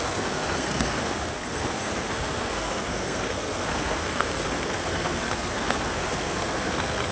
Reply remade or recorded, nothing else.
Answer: remade